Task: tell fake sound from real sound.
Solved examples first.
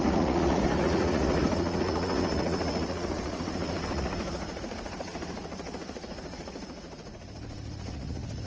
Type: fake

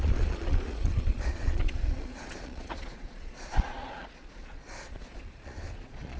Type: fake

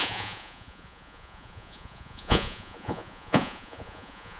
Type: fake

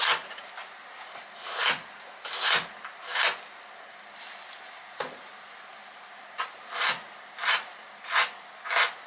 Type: real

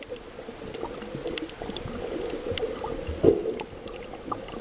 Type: real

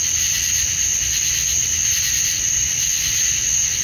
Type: real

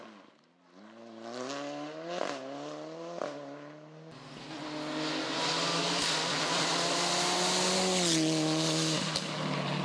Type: real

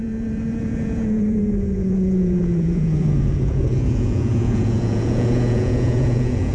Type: fake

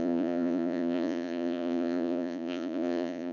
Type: fake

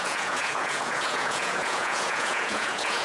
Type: fake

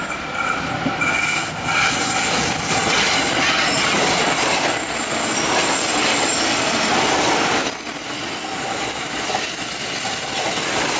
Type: real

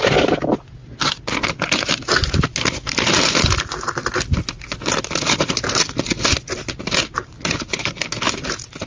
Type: real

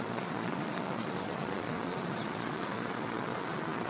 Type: fake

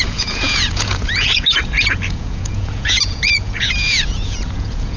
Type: fake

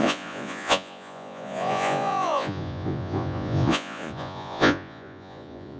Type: fake